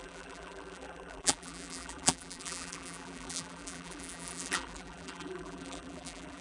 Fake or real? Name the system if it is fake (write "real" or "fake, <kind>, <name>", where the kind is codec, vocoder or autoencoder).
fake, vocoder, BigVGAN v2